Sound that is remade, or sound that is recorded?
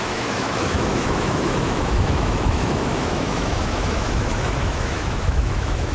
remade